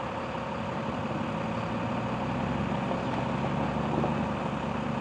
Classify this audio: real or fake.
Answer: real